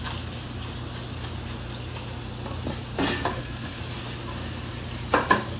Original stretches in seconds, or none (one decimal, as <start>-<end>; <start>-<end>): 0.0-3.3; 3.8-5.6